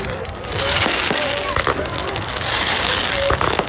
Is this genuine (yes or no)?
no